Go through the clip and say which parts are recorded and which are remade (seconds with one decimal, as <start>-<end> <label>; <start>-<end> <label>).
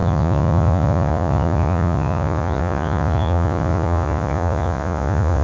0.0-5.4 remade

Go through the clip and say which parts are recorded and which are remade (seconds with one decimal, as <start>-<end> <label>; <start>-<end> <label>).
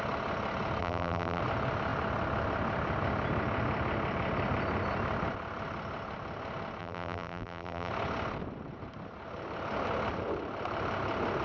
0.0-0.8 recorded; 0.8-1.4 remade; 1.4-6.8 recorded; 6.8-7.9 remade; 7.9-11.4 recorded